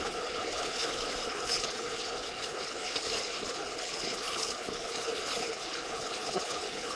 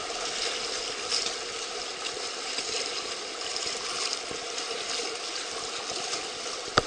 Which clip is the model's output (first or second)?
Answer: first